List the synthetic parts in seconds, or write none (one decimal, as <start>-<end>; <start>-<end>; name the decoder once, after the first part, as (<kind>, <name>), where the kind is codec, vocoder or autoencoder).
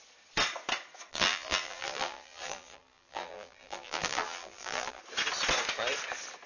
1.1-5.0 (vocoder, BigVGAN v2)